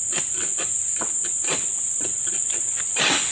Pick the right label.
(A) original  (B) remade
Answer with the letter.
A